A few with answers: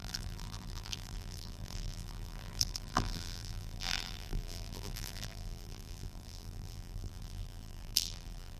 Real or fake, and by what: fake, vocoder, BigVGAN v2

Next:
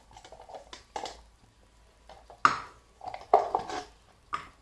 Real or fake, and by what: real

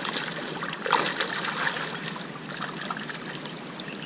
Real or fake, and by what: real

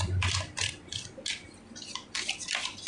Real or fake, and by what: fake, vocoder, BigVGAN v2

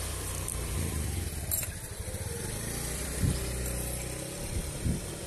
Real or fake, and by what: fake, vocoder, BigVGAN v2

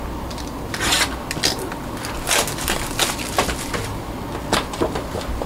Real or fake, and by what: real